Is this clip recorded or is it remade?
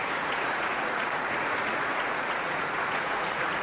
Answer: remade